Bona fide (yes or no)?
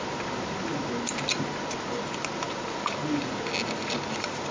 yes